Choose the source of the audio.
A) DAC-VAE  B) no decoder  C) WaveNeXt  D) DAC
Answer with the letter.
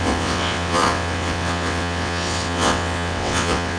C